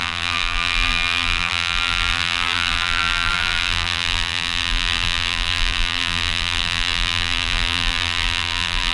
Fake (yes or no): yes